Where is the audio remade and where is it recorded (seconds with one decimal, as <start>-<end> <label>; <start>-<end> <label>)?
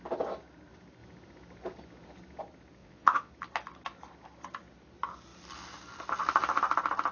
0.0-2.8 recorded; 2.8-3.3 remade; 3.3-7.1 recorded